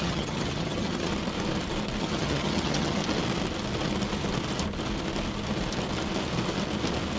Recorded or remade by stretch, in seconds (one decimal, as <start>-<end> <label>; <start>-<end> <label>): 0.0-1.1 remade; 1.1-2.0 recorded; 2.0-3.0 remade; 3.0-7.2 recorded